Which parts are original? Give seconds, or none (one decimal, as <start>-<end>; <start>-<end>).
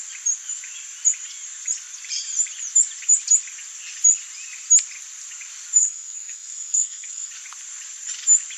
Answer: 0.0-5.8; 7.3-8.6